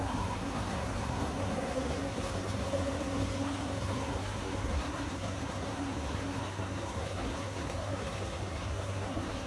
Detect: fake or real fake